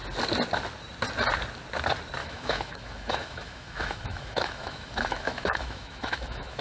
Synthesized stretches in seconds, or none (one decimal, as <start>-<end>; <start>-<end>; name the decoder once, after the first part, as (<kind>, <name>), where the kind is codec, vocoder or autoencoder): 2.2-6.6 (autoencoder, DAC-VAE)